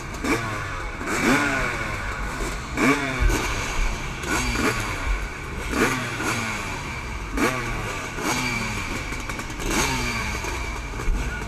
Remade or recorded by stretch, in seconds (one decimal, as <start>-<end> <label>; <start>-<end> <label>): 0.0-11.5 remade